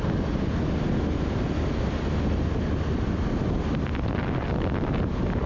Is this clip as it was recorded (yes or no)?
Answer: yes